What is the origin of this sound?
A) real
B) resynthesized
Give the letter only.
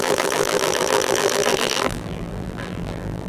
B